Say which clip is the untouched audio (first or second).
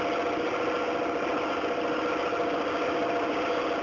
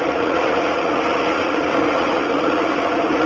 first